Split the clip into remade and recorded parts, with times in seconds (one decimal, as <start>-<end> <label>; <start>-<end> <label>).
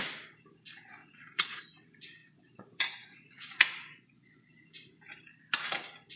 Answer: 0.0-1.0 recorded; 1.0-1.6 remade; 1.6-2.2 recorded; 2.2-4.5 remade; 4.5-6.2 recorded